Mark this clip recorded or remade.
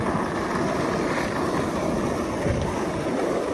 recorded